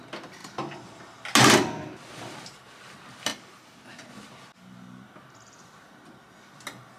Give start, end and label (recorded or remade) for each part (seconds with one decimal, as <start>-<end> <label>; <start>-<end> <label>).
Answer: 0.0-0.4 recorded; 0.4-1.0 remade; 1.0-7.0 recorded

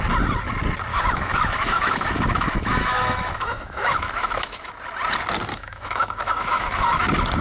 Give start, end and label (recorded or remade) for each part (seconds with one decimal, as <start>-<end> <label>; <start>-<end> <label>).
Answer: 0.0-0.9 recorded; 0.9-4.7 remade; 4.7-5.5 recorded; 5.5-7.0 remade; 7.0-7.4 recorded

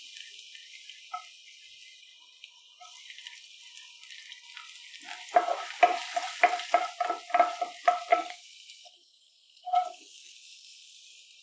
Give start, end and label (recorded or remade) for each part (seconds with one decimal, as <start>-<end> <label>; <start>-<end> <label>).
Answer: 0.0-8.1 recorded; 8.1-11.0 remade; 11.0-11.4 recorded

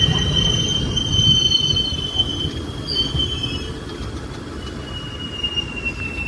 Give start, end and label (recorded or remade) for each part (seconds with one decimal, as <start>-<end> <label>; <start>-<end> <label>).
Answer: 0.0-6.3 recorded